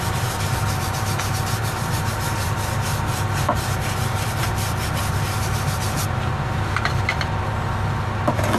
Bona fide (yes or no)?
no